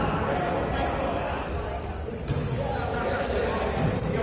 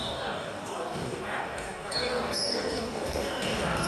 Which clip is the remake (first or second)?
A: second